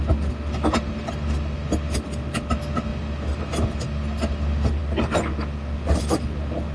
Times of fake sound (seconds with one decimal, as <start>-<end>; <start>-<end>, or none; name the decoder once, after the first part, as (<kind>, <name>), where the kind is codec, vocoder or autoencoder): none